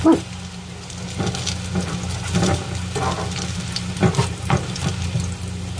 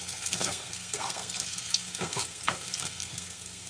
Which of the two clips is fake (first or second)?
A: second